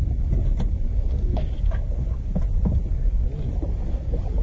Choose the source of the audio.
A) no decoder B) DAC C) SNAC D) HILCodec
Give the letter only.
A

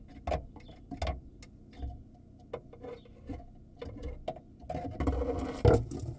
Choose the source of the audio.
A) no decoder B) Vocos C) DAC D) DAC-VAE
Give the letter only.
A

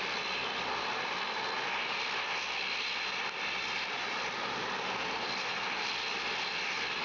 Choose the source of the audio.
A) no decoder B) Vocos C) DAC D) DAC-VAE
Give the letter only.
A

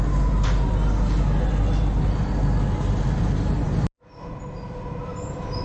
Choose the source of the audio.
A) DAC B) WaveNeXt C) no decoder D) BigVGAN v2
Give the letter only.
C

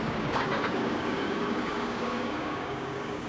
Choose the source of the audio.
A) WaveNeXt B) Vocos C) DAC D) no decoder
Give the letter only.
C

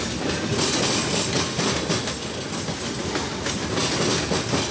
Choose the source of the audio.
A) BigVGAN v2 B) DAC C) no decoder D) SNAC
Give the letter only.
C